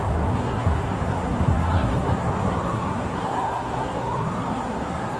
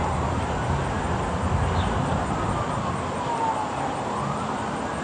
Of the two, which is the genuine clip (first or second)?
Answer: second